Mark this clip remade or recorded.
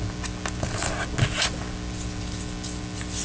recorded